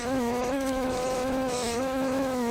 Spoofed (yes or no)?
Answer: yes